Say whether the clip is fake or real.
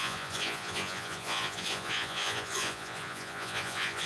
fake